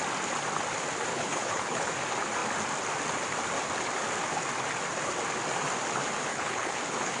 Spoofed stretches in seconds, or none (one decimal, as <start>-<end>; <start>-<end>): 1.1-1.9; 6.3-7.2